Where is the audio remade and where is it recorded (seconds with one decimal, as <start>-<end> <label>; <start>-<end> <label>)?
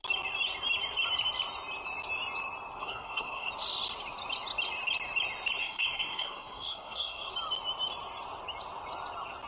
0.0-2.8 recorded; 2.8-3.5 remade; 3.5-5.6 recorded; 5.6-7.3 remade; 7.3-9.5 recorded